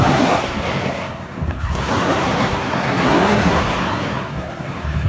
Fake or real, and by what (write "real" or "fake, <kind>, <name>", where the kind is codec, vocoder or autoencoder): fake, codec, SNAC